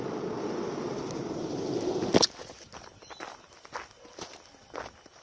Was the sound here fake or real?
real